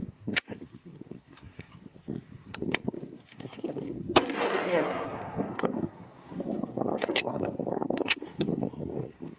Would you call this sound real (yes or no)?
no